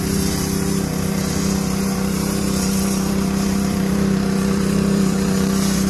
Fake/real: fake